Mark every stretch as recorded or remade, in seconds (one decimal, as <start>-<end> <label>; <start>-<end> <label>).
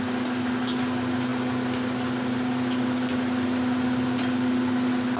0.0-5.2 recorded